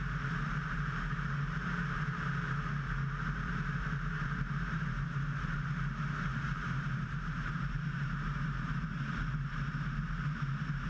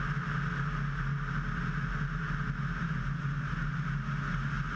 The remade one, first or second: first